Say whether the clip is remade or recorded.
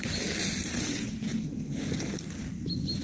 recorded